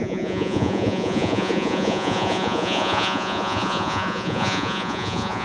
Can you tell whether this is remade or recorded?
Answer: remade